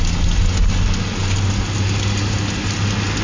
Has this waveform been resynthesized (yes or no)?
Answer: no